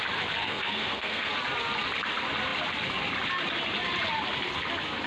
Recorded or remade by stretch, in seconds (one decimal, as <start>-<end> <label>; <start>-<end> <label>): 0.0-0.4 recorded; 0.4-1.3 remade; 1.3-5.1 recorded